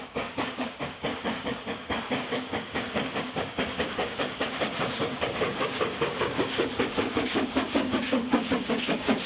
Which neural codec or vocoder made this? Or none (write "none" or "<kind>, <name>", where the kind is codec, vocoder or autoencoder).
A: codec, DAC